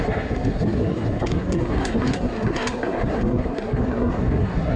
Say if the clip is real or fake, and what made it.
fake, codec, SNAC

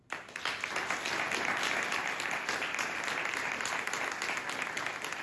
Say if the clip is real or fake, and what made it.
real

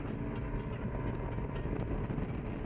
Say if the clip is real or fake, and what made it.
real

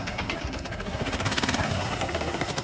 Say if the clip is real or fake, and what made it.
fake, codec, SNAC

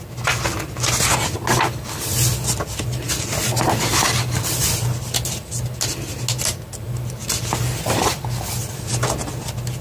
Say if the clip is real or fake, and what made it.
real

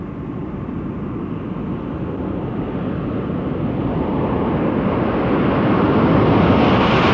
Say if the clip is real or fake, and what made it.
real